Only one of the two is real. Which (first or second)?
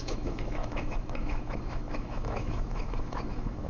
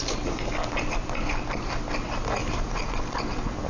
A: second